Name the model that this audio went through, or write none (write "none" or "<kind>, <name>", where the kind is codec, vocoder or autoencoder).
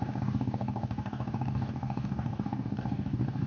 codec, DAC